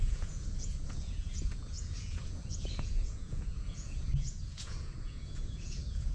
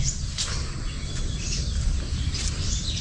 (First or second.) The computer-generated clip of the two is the first